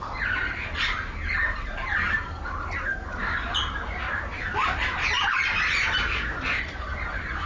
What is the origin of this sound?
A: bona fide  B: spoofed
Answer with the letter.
A